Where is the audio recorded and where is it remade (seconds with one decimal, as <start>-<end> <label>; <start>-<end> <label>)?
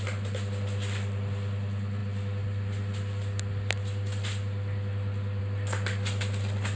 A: 0.0-6.8 recorded